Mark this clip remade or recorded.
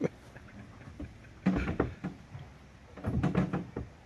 recorded